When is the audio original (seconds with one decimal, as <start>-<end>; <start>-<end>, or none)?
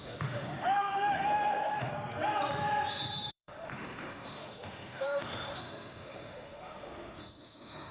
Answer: 1.9-3.3